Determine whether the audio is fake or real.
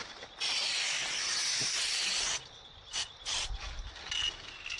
real